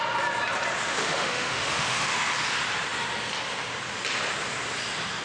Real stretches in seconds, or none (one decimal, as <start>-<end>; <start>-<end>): 0.0-0.9; 2.3-5.2